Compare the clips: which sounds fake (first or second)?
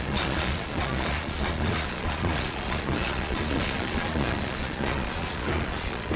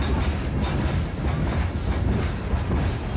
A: first